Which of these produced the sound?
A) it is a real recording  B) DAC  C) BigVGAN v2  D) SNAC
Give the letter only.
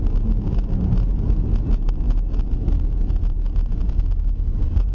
A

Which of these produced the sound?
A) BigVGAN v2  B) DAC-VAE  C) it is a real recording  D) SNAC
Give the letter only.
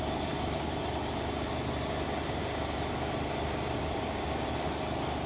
C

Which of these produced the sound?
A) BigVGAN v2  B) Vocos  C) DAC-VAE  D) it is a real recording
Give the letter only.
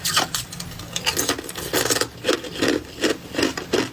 D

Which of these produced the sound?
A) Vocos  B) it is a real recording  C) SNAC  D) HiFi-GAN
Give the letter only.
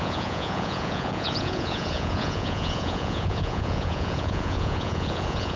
A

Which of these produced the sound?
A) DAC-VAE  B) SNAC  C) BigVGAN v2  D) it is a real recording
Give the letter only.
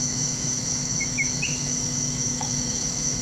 A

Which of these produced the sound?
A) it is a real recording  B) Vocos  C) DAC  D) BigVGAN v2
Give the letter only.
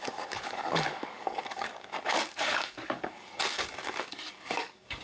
C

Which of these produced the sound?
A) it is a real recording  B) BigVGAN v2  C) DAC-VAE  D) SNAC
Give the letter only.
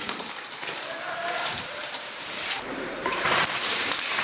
B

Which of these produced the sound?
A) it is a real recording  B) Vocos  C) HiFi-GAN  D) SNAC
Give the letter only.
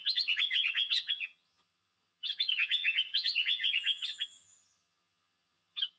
C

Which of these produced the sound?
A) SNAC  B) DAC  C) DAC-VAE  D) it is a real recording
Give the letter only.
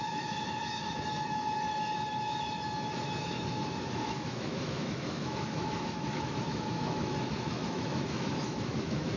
C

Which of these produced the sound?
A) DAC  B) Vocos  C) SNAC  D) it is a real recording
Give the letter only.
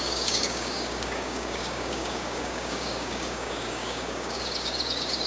A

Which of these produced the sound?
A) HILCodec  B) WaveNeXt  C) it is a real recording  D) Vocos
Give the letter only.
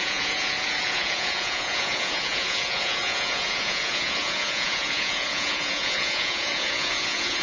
D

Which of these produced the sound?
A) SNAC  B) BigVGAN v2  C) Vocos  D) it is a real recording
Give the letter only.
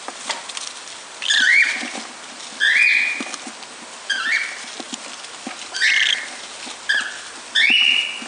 D